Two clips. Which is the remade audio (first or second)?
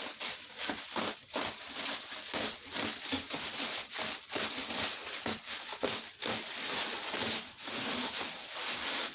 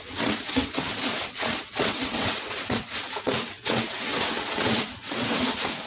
second